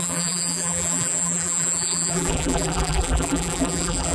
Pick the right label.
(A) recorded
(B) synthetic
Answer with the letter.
B